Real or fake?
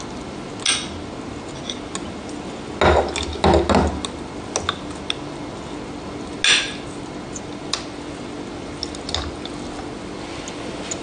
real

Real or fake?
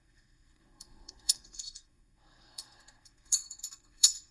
fake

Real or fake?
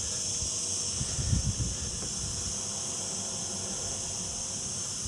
real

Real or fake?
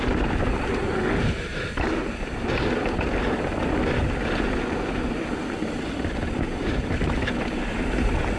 real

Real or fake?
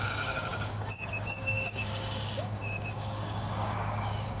fake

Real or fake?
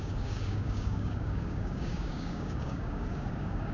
fake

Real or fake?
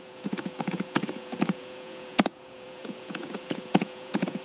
fake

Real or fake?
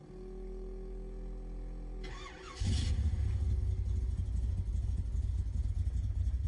real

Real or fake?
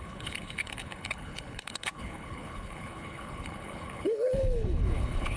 fake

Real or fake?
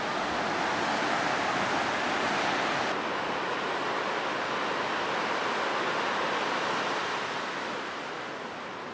real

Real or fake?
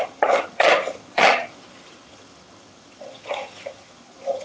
fake